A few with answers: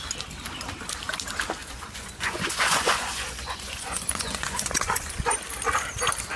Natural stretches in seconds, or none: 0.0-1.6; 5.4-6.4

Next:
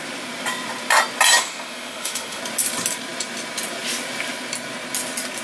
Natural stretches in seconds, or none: 0.0-1.4; 2.4-5.4